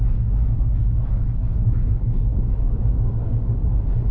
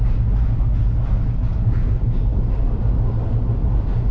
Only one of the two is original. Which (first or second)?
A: second